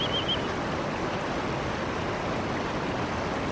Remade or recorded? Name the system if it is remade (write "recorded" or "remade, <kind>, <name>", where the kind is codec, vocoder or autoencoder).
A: recorded